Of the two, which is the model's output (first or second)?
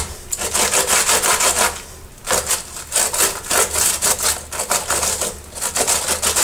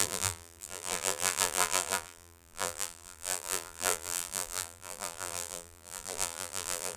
second